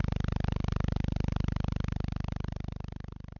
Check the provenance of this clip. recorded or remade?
recorded